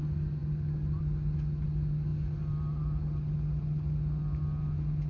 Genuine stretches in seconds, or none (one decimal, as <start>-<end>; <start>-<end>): 0.0-5.1